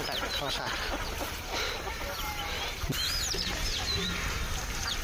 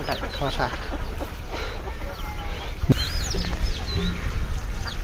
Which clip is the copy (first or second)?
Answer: first